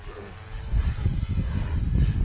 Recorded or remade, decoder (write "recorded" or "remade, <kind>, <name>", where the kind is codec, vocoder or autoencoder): recorded